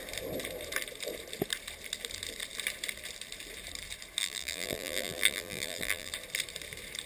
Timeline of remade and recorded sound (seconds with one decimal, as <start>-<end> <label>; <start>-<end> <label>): 0.0-4.2 recorded; 4.2-6.1 remade; 6.1-7.1 recorded